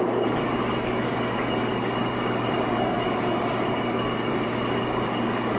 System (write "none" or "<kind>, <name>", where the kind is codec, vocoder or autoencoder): codec, DAC